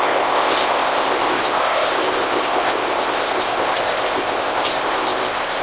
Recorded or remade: remade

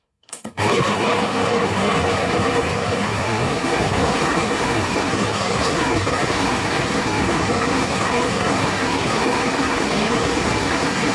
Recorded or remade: remade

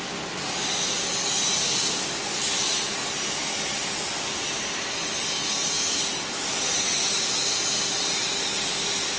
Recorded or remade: recorded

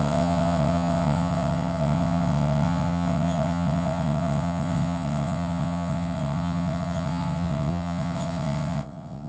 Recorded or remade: remade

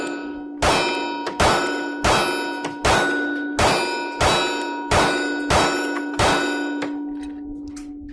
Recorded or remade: recorded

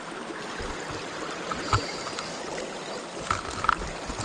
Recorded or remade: recorded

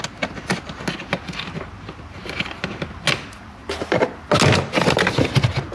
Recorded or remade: recorded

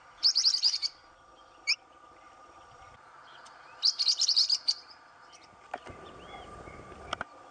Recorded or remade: recorded